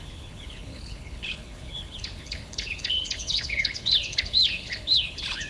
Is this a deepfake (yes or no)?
yes